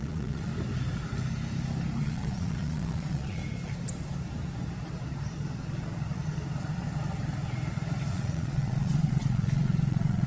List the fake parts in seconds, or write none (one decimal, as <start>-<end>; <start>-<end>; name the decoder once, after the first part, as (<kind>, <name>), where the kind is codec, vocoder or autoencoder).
0.0-0.5 (vocoder, Vocos); 2.0-3.4; 8.1-10.3